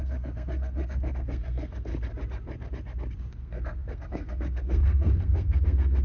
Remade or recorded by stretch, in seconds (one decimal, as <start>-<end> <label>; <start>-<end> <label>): 0.0-1.9 remade; 1.9-3.3 recorded; 3.3-6.0 remade